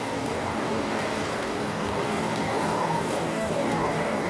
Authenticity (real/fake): fake